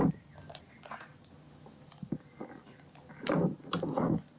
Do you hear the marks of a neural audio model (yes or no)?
no